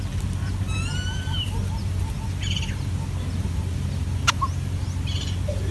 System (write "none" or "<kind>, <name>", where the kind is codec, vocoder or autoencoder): none